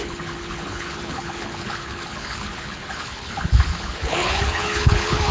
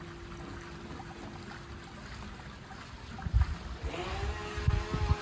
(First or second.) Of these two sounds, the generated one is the first